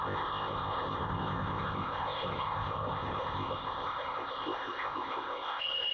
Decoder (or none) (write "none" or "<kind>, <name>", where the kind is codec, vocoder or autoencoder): codec, ZipCodec